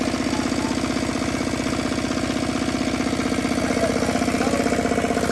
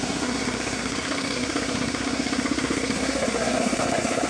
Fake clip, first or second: second